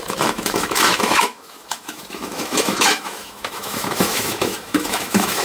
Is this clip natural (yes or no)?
no